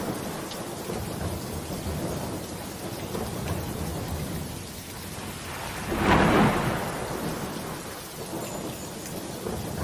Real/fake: real